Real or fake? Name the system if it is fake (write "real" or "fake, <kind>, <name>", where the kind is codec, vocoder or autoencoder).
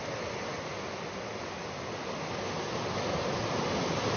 real